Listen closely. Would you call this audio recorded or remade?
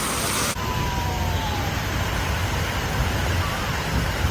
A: remade